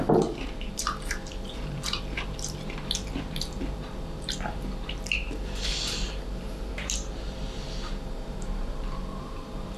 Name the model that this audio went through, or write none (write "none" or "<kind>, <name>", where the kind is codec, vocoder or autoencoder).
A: vocoder, BigVGAN v2